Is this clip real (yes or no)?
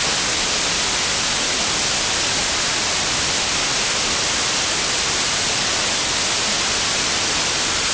yes